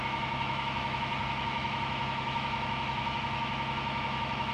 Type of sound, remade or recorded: remade